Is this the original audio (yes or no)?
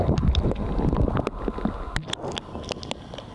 yes